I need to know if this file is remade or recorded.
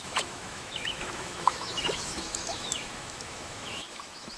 remade